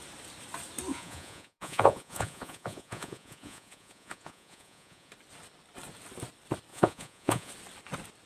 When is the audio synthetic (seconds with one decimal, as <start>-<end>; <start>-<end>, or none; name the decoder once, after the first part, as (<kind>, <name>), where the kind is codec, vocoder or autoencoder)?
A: 0.9-5.1 (vocoder, Vocos); 6.7-7.5